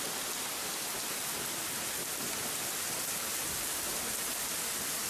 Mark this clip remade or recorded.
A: remade